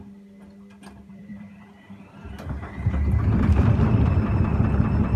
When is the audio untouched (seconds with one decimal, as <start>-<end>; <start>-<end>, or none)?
0.0-1.3; 4.4-5.2